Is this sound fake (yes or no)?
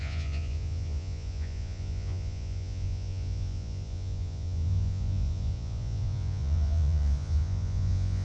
yes